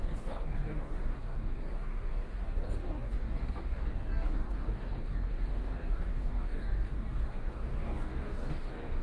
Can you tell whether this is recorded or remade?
remade